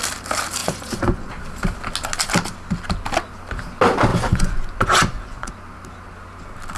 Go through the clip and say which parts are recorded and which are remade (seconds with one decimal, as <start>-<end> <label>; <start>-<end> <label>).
0.0-0.6 recorded; 0.6-1.3 remade; 1.3-4.1 recorded; 4.1-5.5 remade; 5.5-6.8 recorded